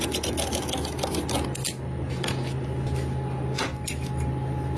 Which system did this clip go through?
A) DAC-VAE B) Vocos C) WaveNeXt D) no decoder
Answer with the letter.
D